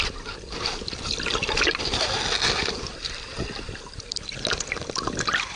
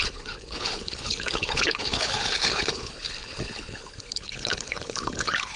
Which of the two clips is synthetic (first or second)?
second